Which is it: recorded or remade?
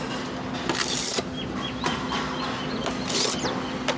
recorded